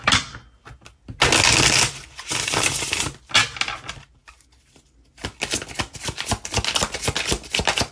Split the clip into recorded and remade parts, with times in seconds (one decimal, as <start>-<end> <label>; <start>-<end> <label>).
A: 0.0-7.9 recorded